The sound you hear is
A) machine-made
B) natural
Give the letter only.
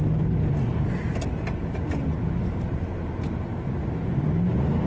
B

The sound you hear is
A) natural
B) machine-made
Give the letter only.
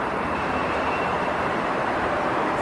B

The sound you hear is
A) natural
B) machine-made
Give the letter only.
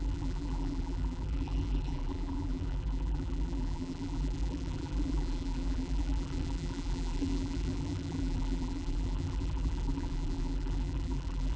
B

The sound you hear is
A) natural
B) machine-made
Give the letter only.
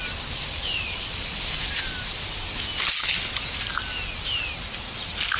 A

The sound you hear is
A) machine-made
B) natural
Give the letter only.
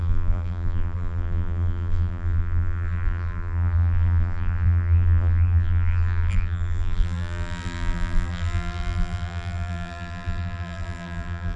A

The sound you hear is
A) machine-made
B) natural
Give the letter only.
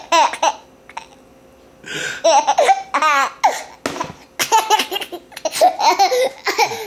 B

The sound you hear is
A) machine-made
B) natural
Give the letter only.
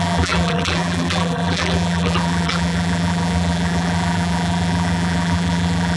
A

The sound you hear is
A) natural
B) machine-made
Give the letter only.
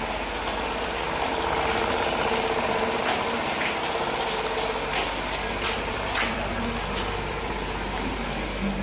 B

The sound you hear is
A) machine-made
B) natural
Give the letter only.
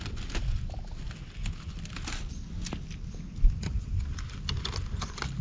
B